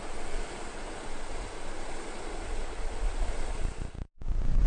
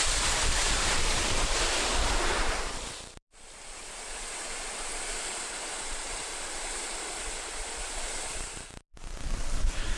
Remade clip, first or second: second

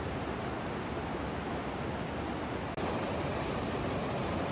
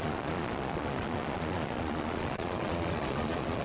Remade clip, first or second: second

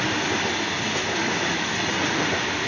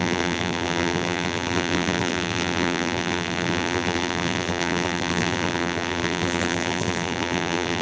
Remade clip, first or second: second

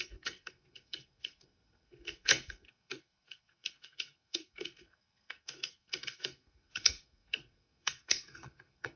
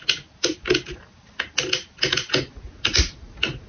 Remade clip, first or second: first